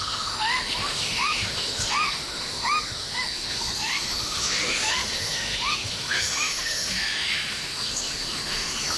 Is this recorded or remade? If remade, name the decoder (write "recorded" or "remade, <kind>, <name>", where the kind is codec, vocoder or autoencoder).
remade, autoencoder, DAC-VAE